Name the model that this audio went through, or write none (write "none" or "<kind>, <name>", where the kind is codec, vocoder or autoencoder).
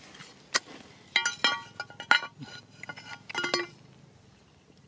none